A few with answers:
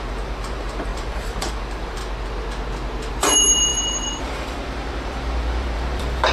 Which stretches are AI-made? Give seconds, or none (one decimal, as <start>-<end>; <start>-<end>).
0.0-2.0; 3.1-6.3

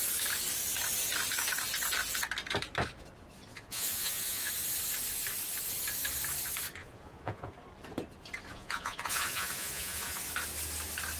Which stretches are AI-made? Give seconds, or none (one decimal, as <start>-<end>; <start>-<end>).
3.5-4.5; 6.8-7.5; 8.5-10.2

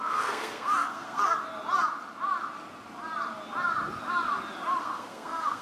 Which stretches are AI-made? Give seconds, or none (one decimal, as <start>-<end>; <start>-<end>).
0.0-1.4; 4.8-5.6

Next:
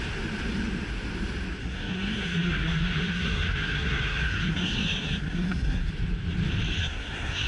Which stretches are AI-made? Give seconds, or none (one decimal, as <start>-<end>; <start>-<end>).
1.6-5.9; 6.8-7.5

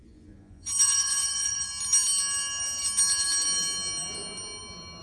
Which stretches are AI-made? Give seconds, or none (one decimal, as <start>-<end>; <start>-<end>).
0.0-1.7

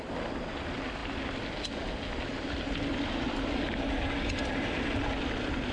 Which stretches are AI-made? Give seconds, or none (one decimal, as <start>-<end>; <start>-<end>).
none

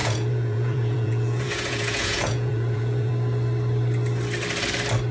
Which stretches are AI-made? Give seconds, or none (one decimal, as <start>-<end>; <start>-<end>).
0.0-3.1